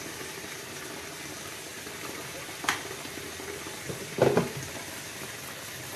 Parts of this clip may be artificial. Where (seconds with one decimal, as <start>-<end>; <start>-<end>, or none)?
none